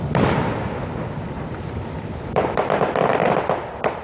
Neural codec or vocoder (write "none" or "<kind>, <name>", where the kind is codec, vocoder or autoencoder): none